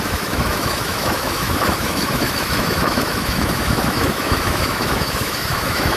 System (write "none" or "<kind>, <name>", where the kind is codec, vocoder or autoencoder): autoencoder, DAC-VAE